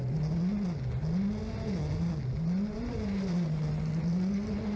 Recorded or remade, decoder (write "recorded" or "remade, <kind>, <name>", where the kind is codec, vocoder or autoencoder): recorded